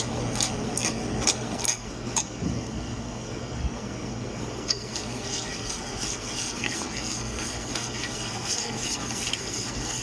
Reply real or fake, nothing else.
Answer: fake